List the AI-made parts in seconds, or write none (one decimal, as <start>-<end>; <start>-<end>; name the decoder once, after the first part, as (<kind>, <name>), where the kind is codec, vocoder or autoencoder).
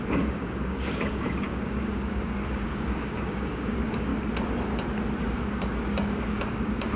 0.0-4.1 (codec, DAC); 5.2-7.0